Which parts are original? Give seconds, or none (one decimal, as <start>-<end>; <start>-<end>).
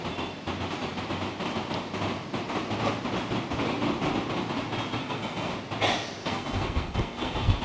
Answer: 0.0-5.0; 5.5-6.2